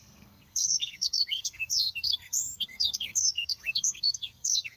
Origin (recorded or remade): remade